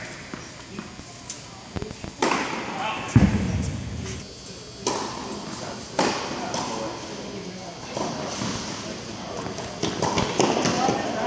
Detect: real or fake real